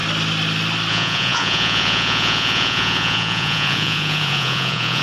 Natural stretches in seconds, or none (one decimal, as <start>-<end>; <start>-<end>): 0.0-0.9